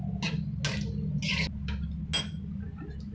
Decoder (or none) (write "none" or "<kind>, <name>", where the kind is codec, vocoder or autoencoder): none